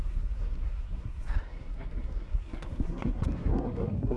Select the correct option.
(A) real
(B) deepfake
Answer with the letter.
B